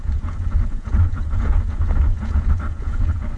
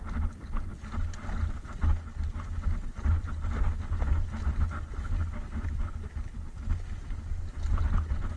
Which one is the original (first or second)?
second